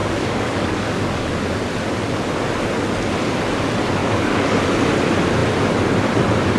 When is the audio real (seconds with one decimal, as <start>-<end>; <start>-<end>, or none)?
1.3-4.0; 4.6-6.6